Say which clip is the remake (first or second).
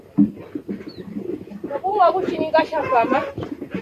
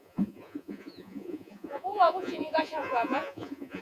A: second